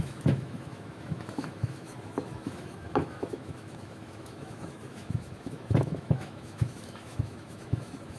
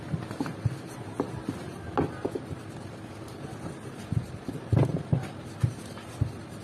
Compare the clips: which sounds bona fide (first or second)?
second